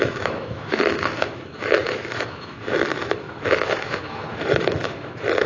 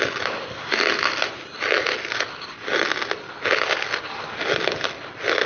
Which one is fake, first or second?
first